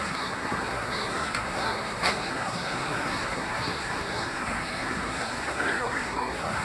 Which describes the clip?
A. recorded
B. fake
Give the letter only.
B